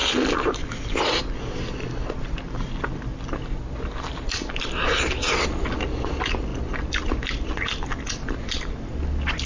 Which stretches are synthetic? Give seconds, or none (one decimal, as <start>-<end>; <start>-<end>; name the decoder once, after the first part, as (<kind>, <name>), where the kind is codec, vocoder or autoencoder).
none